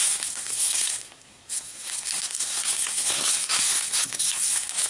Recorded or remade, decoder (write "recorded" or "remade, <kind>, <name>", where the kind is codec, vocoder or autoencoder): remade, codec, SNAC